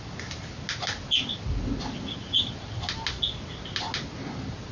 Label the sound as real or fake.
real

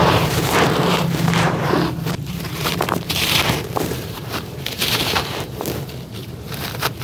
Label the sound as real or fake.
fake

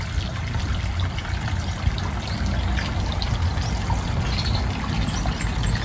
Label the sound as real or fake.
real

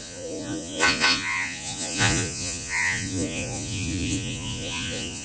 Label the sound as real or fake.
fake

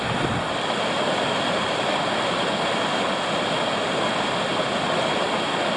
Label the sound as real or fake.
real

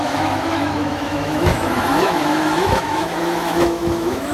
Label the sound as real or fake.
fake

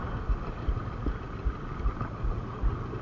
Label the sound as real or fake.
real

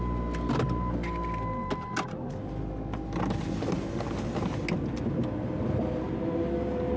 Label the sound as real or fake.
real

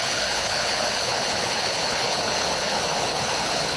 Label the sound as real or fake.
fake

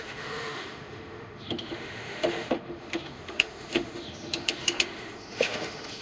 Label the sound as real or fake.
fake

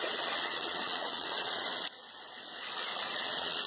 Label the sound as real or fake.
fake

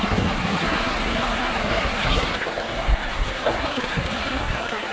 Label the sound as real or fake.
fake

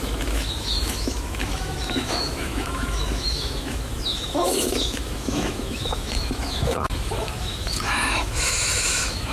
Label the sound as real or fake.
fake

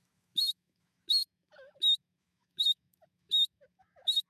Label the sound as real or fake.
fake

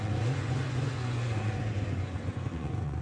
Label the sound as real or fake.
fake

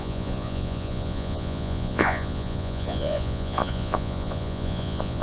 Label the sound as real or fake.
fake